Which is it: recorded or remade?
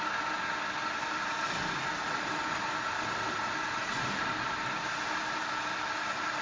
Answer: recorded